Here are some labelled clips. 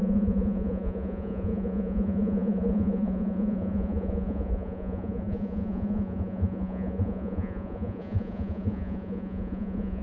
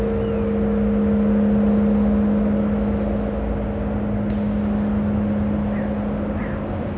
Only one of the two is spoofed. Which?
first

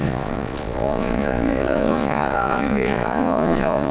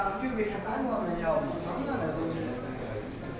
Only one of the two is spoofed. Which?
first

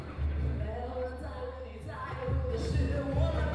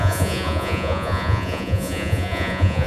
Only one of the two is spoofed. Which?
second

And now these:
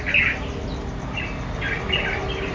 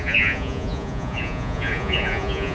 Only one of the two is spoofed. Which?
second